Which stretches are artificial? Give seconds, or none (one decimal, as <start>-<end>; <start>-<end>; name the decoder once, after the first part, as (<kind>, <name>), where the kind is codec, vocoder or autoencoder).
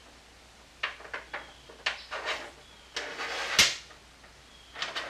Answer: none